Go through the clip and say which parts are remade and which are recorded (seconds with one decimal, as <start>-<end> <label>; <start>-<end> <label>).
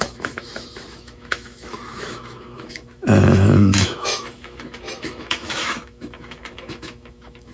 0.0-7.5 remade